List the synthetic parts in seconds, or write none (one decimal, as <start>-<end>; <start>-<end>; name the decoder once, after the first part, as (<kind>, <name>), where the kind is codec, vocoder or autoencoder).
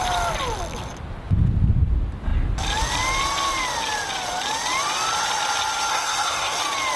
5.9-6.6 (codec, SNAC)